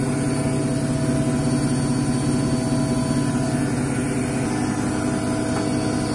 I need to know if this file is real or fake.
real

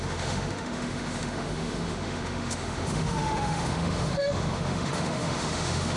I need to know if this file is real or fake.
fake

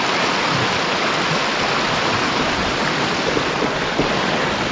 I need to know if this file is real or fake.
real